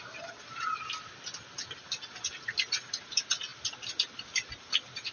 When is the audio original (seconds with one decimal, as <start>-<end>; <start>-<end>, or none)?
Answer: 0.0-5.1